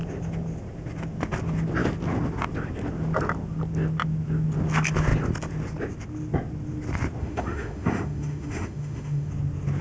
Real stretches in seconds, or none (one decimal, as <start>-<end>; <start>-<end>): 0.0-7.2; 9.3-9.8